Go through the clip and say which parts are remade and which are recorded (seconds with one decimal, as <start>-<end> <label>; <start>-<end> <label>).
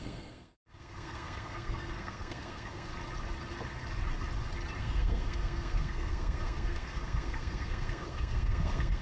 0.0-2.9 remade; 2.9-4.8 recorded; 4.8-9.0 remade